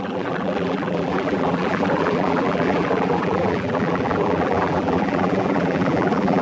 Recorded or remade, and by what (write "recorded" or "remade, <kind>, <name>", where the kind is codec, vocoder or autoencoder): remade, vocoder, BigVGAN v2